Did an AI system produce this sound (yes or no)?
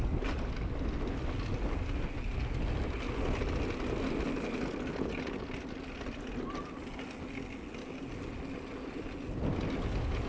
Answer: no